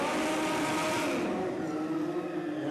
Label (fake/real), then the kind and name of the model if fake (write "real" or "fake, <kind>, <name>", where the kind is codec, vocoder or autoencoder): real